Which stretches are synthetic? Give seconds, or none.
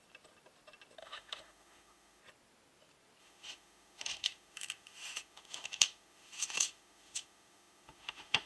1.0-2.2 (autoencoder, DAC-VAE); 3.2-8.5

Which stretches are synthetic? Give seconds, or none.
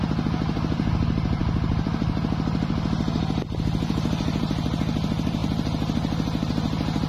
none